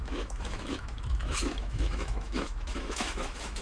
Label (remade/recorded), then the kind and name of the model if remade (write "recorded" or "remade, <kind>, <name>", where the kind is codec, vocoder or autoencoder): remade, autoencoder, DAC-VAE